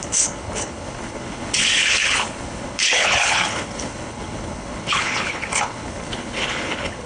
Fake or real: fake